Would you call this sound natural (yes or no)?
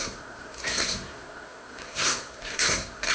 no